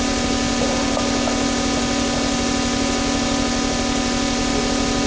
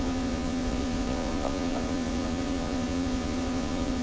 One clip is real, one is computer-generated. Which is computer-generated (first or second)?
second